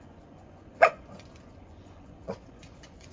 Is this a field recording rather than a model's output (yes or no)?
no